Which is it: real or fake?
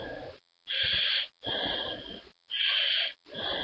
real